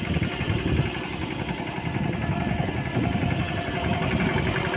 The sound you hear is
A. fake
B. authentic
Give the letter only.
B